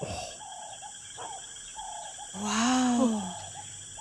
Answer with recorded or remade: recorded